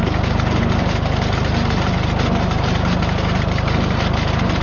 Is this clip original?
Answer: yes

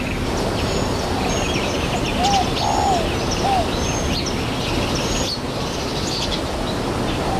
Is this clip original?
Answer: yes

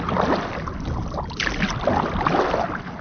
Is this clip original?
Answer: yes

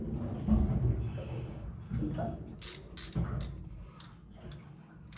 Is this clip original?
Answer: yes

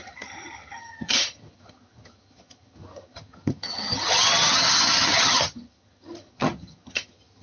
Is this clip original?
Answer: no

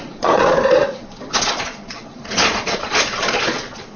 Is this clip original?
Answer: no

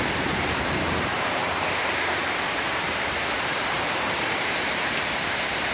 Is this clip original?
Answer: no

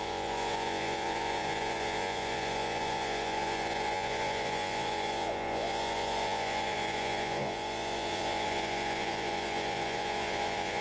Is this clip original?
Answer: no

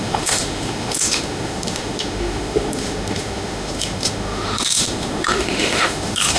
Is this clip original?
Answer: no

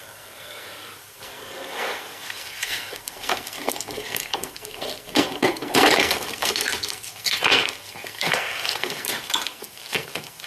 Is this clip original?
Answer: no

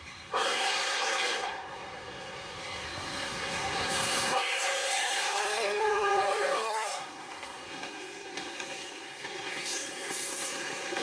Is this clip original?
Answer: no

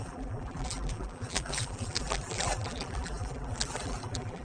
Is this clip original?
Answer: no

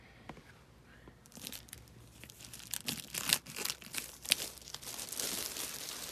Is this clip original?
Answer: yes